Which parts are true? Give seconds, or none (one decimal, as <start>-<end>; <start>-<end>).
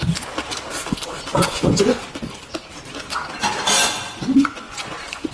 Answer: 0.0-1.3; 2.0-3.8